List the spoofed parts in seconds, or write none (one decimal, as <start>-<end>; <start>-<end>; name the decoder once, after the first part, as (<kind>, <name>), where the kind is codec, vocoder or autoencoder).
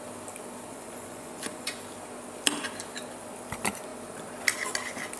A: 0.7-1.8 (vocoder, Vocos)